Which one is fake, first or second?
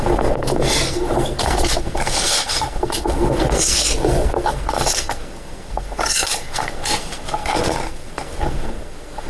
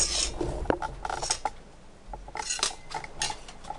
first